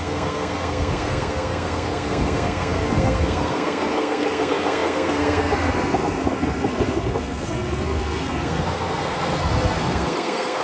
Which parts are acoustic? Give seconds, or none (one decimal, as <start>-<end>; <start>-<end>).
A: none